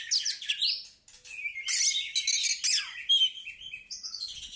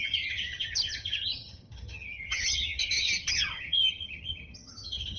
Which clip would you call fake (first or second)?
second